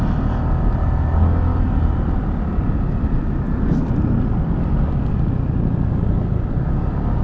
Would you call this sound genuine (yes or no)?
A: yes